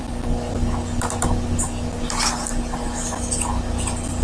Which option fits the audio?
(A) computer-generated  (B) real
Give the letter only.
B